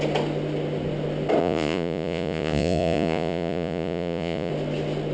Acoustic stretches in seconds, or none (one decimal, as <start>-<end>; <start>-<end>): 0.0-1.4; 4.5-5.1